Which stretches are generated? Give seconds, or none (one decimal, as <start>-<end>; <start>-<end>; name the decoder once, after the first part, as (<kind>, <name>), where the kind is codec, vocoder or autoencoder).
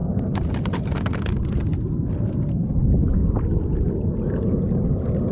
none